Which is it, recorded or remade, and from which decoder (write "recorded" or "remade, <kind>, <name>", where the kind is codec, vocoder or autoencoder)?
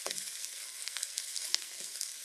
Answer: remade, codec, SNAC